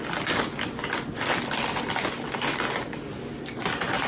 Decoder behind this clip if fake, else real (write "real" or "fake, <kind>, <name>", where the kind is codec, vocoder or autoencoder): real